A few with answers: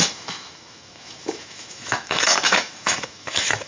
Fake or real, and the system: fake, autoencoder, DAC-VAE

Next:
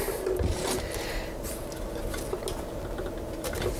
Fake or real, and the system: real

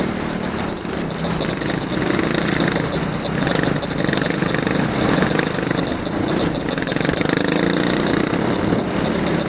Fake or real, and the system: real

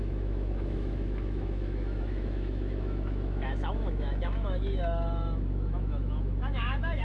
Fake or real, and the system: fake, autoencoder, DAC-VAE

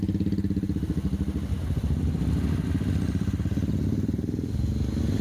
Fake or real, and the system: real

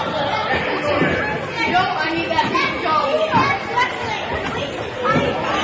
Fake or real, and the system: real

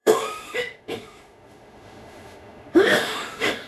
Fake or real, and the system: fake, autoencoder, DAC-VAE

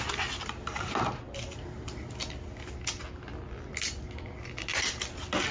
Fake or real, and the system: real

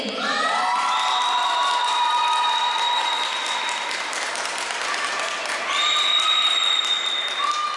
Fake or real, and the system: real